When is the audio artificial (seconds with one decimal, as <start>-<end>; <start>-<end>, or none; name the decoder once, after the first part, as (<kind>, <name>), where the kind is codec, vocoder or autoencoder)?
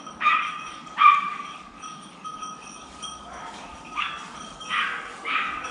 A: 0.0-5.7 (codec, DAC)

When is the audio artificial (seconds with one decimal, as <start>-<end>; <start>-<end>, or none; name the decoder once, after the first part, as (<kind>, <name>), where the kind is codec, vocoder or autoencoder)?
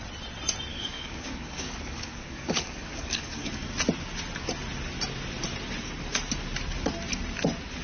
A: 0.7-3.7 (codec, DAC)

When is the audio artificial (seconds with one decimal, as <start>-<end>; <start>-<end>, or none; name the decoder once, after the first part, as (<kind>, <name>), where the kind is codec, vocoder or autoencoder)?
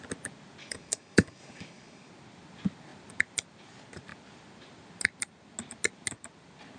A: 0.6-2.1 (codec, DAC)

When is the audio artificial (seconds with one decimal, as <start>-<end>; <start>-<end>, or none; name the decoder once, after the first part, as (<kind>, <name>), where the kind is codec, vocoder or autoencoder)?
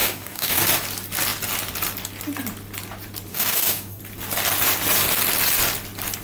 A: 0.0-0.6 (codec, DAC); 3.3-4.0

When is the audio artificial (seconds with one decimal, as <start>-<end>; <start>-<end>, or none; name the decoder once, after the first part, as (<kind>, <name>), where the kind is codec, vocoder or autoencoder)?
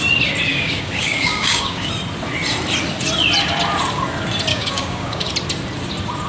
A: 0.5-1.9 (codec, DAC); 4.5-5.3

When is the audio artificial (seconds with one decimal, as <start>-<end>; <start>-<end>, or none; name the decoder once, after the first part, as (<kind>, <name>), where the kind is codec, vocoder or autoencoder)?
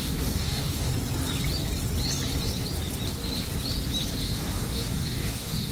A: 0.0-0.9 (codec, DAC); 4.2-5.7